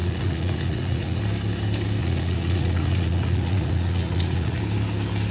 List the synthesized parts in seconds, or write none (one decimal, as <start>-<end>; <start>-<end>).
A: 0.0-1.2; 2.0-4.6